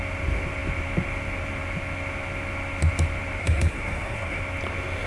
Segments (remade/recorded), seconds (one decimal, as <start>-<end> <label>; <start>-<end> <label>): 0.0-3.4 recorded; 3.4-4.4 remade; 4.4-5.1 recorded